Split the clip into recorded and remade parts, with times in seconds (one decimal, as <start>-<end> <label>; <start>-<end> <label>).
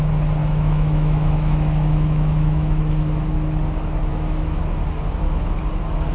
0.0-0.4 recorded; 0.4-2.8 remade; 2.8-4.1 recorded; 4.1-4.6 remade; 4.6-6.1 recorded